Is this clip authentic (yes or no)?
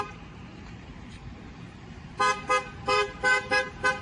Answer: no